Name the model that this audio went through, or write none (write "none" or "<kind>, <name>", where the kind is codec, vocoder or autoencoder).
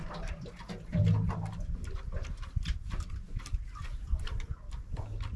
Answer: none